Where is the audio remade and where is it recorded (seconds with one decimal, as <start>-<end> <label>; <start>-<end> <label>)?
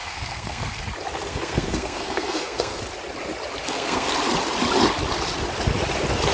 0.0-0.8 remade; 0.8-1.3 recorded; 1.3-2.8 remade; 2.8-3.6 recorded; 3.6-4.1 remade; 4.1-6.3 recorded